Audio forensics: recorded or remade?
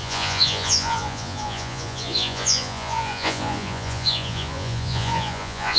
remade